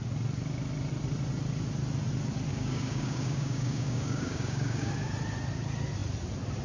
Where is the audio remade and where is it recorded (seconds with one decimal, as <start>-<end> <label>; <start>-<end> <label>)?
0.0-2.5 recorded; 2.5-4.9 remade; 4.9-6.6 recorded